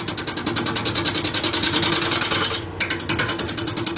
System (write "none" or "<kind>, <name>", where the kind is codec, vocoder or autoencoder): none